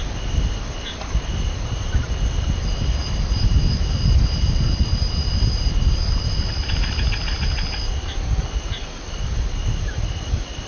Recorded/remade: recorded